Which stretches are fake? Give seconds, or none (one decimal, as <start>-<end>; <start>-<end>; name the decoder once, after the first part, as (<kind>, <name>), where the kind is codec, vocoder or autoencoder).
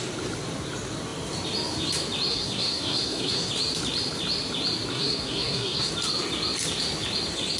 2.3-3.5 (codec, SNAC); 4.9-5.9